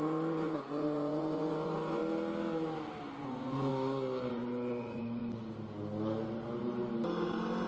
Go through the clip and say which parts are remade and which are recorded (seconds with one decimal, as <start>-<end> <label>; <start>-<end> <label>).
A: 0.0-2.0 remade; 2.0-3.2 recorded; 3.2-3.7 remade; 3.7-4.3 recorded; 4.3-5.2 remade; 5.2-7.7 recorded